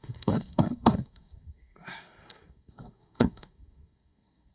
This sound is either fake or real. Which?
fake